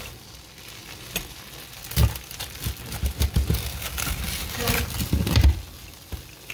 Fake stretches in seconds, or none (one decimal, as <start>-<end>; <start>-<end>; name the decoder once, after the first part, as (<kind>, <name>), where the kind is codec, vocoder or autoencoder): none